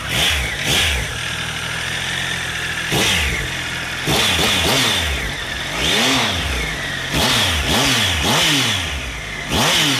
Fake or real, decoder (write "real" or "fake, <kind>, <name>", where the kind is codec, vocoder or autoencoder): real